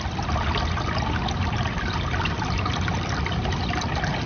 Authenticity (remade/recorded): recorded